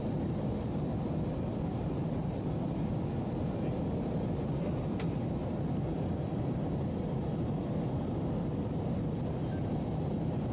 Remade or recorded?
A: recorded